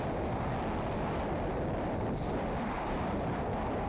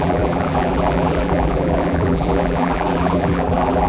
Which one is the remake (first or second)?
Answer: second